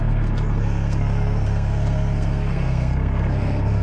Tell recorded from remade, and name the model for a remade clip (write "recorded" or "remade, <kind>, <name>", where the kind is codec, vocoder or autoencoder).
remade, codec, SNAC